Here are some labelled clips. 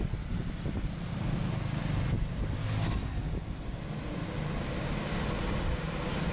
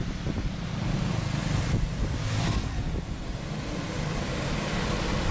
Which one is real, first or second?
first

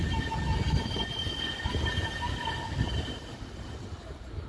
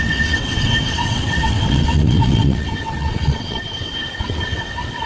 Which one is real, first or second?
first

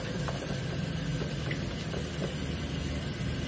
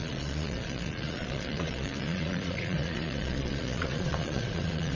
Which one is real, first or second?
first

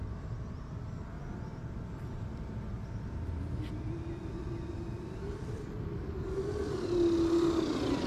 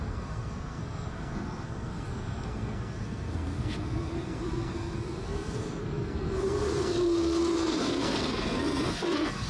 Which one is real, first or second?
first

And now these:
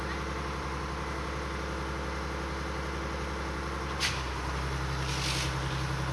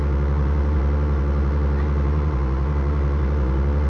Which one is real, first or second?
first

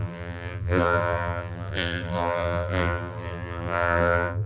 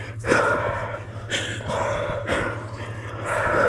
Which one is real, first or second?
second